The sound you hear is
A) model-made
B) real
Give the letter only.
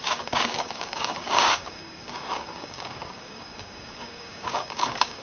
A